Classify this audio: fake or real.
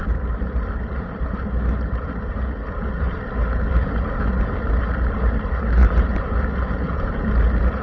fake